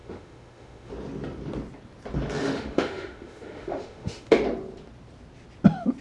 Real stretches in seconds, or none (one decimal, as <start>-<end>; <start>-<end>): 0.9-2.4; 4.3-6.0